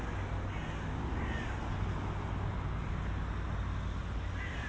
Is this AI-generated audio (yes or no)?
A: no